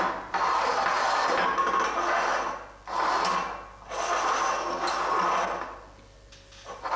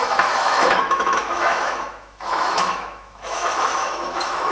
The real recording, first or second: first